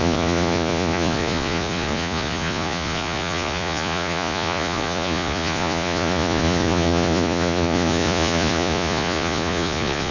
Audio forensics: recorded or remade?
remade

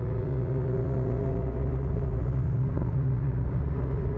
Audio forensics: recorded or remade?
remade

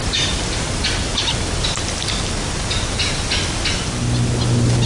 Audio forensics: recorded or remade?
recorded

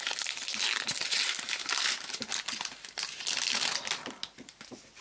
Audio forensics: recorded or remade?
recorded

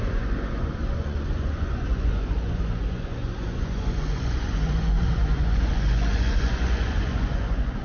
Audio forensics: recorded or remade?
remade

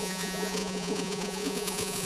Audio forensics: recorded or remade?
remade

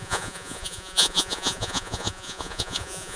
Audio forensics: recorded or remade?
remade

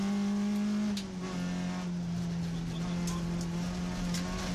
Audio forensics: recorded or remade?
recorded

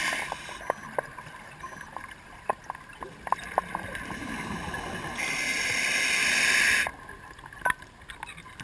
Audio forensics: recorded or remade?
recorded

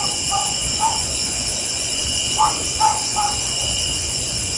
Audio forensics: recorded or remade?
remade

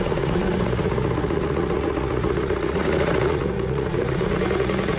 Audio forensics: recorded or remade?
remade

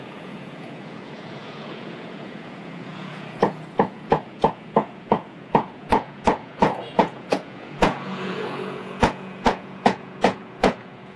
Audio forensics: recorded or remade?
remade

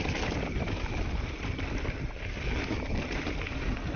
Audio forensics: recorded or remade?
recorded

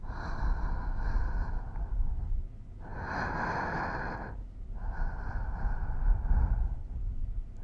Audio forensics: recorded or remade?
recorded